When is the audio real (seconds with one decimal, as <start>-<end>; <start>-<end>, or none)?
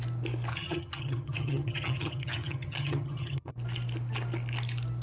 0.0-0.5; 3.5-5.0